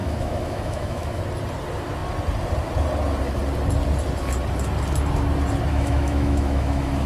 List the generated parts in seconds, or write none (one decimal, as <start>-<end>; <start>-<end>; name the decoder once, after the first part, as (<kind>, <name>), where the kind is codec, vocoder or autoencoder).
0.0-1.2 (autoencoder, DAC-VAE); 5.7-7.1